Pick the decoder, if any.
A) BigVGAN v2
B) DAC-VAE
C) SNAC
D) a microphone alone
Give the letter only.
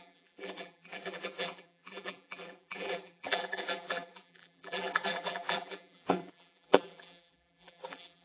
A